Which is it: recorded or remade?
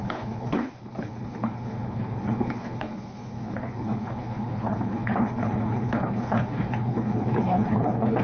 remade